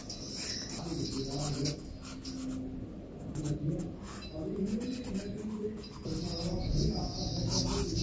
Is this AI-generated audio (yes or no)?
no